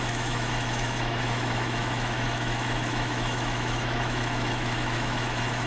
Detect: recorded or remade remade